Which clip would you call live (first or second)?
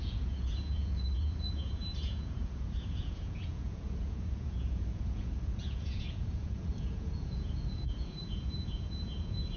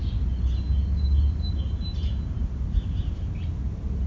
second